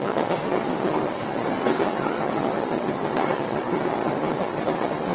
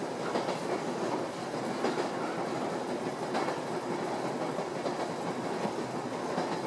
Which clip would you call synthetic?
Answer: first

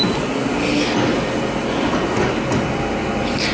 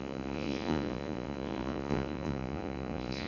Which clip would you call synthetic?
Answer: second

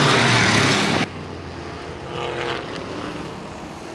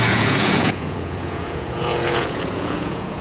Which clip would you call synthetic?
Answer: second